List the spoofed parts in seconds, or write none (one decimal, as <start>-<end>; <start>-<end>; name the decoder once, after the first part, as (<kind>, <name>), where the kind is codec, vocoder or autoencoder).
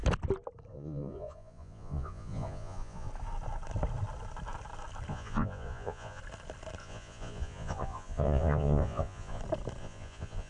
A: 0.7-3.1 (vocoder, Vocos); 5.1-6.2; 6.8-9.4; 9.8-10.5